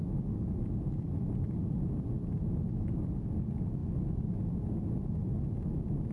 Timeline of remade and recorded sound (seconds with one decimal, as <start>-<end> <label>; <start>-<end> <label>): 0.0-6.1 recorded